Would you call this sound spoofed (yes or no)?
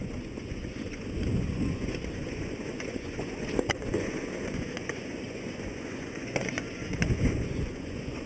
yes